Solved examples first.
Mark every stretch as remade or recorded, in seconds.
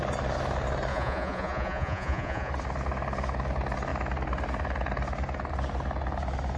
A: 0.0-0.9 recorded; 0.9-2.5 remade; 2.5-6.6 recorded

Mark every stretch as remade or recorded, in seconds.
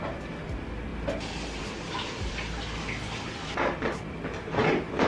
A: 0.0-5.1 recorded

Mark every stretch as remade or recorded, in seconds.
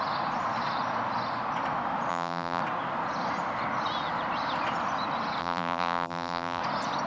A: 0.0-2.1 recorded; 2.1-2.6 remade; 2.6-5.4 recorded; 5.4-6.6 remade; 6.6-7.1 recorded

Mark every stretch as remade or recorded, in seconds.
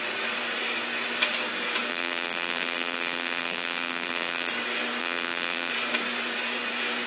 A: 0.0-1.9 recorded; 1.9-4.5 remade; 4.5-5.0 recorded; 5.0-5.7 remade; 5.7-7.1 recorded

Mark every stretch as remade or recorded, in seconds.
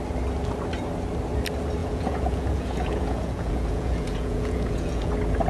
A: 0.0-1.8 recorded; 1.8-5.1 remade; 5.1-5.5 recorded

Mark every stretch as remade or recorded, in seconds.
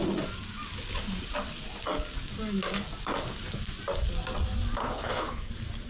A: 0.0-4.8 recorded; 4.8-5.5 remade; 5.5-5.9 recorded